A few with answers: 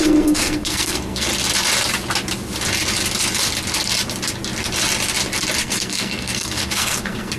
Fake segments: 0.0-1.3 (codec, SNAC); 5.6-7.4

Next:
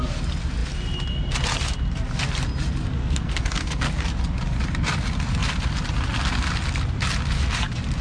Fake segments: 3.0-3.9 (codec, SNAC)

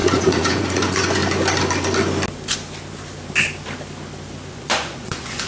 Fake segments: 0.0-1.2 (vocoder, Vocos); 4.5-5.5

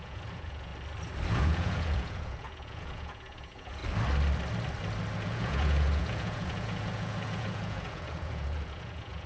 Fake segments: 0.0-0.7 (vocoder, Vocos); 1.3-3.8; 5.2-9.3

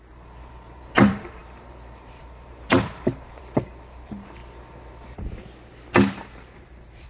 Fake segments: 0.0-4.4 (vocoder, BigVGAN v2); 6.1-7.1

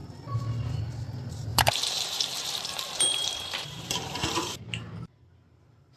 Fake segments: 1.5-4.6 (vocoder, BigVGAN v2)